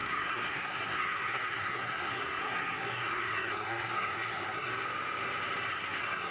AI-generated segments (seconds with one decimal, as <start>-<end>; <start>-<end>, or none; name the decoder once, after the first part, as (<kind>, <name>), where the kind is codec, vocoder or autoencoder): 0.0-4.7 (codec, SNAC); 5.7-6.3